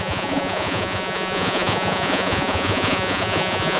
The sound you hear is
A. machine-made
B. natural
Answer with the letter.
A